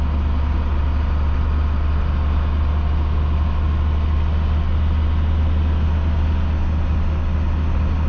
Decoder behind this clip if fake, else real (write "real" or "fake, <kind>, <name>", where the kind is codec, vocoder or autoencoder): real